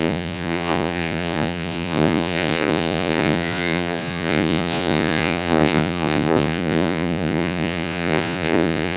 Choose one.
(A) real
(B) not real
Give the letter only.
B